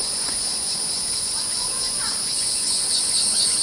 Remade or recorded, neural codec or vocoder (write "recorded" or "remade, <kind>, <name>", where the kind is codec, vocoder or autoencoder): remade, vocoder, Vocos